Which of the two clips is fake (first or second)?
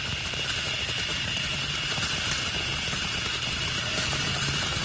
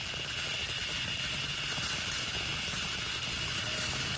first